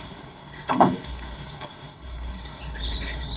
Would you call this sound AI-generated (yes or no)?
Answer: yes